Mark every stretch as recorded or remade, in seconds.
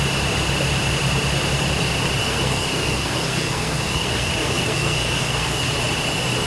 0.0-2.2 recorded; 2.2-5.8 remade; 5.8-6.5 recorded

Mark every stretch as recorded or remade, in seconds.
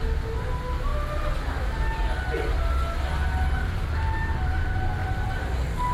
0.0-5.9 recorded